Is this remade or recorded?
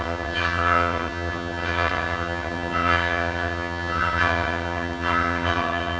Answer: remade